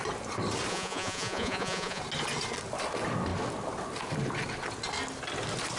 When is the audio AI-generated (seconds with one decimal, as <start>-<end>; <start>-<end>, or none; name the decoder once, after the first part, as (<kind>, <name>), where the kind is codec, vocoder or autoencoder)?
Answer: 0.7-2.0 (vocoder, Vocos)